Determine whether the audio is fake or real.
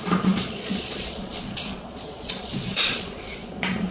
fake